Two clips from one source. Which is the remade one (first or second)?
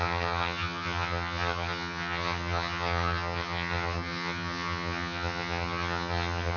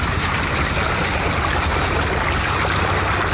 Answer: first